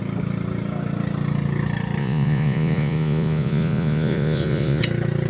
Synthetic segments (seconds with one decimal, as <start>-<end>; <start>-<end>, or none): 2.0-4.8